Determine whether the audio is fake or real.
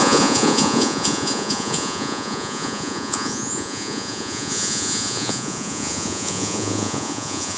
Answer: fake